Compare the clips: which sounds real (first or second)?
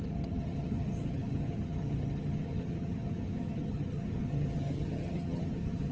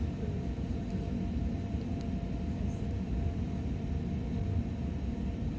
second